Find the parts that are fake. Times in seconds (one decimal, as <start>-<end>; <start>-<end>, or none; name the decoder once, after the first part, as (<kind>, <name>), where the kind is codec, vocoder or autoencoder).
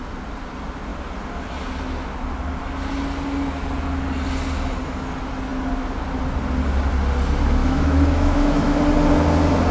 7.6-8.8 (autoencoder, DAC-VAE)